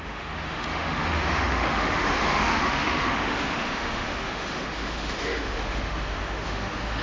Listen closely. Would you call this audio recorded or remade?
remade